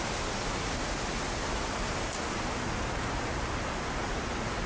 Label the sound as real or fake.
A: real